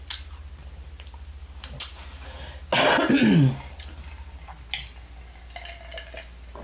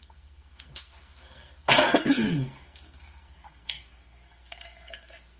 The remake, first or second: second